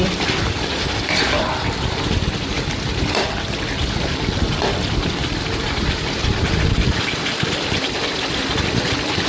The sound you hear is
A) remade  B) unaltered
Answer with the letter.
B